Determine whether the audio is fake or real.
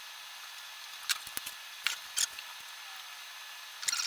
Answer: real